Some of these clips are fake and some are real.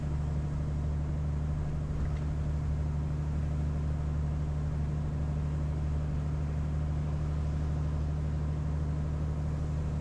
real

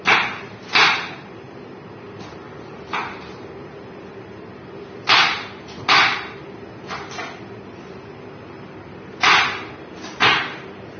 real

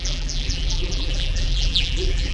fake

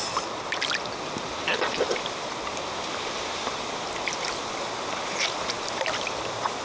real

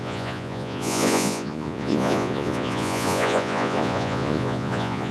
fake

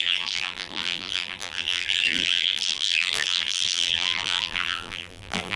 fake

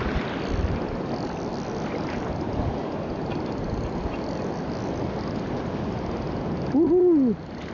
real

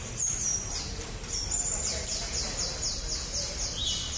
real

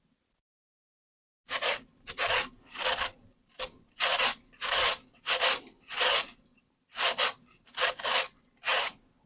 real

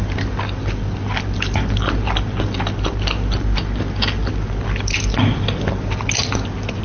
real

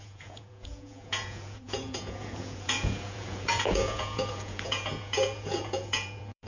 fake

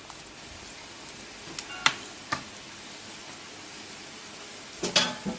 real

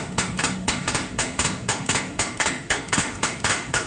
fake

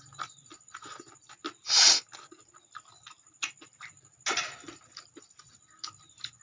real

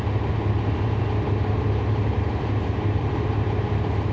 real